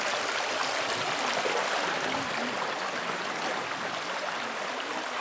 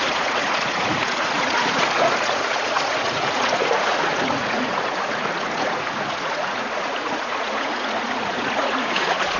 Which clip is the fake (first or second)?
second